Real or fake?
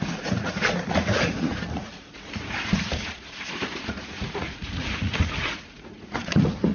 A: fake